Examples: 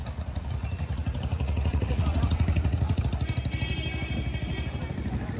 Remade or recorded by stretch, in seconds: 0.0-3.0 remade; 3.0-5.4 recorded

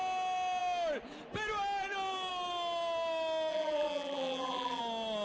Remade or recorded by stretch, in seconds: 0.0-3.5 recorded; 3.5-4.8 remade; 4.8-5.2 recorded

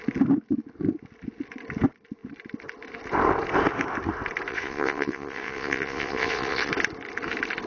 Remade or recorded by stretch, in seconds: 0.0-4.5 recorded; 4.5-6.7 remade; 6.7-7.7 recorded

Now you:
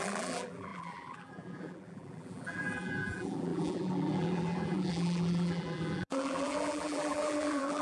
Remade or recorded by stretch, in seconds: 0.0-7.8 remade